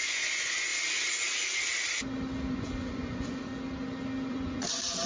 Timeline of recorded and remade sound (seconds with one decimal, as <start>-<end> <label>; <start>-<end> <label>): 0.0-0.7 remade; 0.7-2.5 recorded; 2.5-3.5 remade; 3.5-4.3 recorded; 4.3-5.1 remade